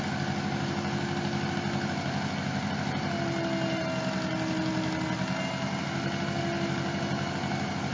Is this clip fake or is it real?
real